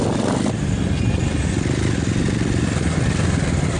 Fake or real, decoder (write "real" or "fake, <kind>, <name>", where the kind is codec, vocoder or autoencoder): real